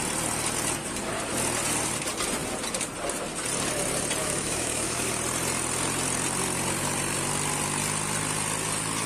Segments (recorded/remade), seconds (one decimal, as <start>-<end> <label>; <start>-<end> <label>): 0.0-4.2 recorded; 4.2-5.1 remade; 5.1-9.1 recorded